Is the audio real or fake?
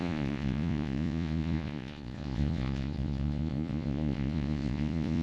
fake